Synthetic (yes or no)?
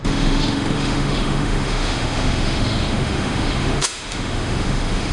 yes